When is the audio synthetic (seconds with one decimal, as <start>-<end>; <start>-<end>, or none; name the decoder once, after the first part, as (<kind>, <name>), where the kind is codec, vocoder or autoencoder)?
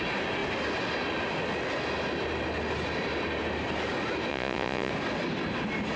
4.3-4.9 (vocoder, Vocos)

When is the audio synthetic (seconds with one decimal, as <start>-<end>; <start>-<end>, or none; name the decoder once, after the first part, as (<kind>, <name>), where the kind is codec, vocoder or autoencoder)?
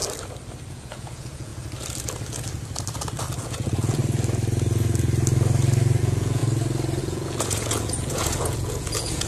0.7-1.5 (vocoder, Vocos); 3.4-4.0; 6.0-6.4; 7.0-9.3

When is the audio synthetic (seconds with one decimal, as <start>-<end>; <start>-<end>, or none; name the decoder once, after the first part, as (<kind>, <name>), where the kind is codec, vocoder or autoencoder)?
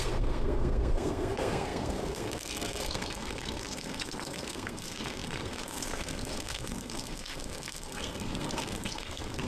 0.0-9.5 (codec, SNAC)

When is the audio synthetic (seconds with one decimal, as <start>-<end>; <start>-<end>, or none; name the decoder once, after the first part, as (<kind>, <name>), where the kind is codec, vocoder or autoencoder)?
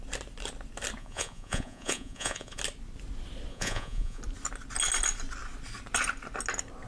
1.0-2.6 (vocoder, Vocos); 3.5-4.2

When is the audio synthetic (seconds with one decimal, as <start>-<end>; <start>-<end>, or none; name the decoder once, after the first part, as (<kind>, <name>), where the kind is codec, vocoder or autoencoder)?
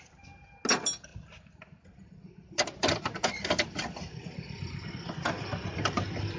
1.1-4.9 (vocoder, BigVGAN v2)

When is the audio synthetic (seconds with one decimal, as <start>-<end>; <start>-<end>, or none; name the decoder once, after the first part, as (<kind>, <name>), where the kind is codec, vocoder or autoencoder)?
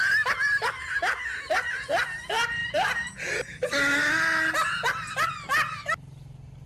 2.6-3.2 (vocoder, BigVGAN v2)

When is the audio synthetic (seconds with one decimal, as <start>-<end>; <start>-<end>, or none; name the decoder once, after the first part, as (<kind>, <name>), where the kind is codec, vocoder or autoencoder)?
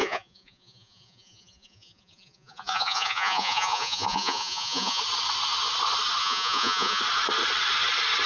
0.0-5.0 (vocoder, Vocos); 6.2-7.0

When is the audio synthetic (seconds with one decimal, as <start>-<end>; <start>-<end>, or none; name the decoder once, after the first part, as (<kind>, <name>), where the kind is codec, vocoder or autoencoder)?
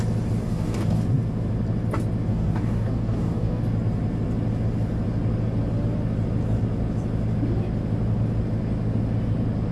0.4-1.0 (codec, DAC); 2.3-3.6